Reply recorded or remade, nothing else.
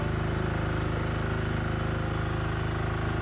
recorded